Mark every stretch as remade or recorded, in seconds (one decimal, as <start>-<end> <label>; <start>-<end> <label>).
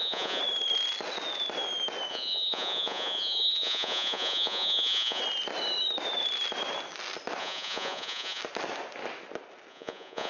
0.0-0.4 remade; 0.4-2.1 recorded; 2.1-5.2 remade; 5.2-7.4 recorded; 7.4-8.4 remade; 8.4-9.7 recorded; 9.7-10.3 remade